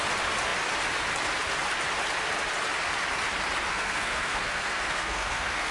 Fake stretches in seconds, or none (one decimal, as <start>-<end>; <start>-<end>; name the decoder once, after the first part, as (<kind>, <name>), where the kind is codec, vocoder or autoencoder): 3.7-5.7 (codec, SNAC)